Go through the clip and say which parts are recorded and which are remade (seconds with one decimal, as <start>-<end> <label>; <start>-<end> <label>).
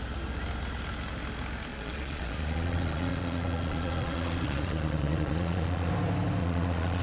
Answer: 0.0-1.7 recorded; 1.7-5.9 remade; 5.9-6.4 recorded; 6.4-7.0 remade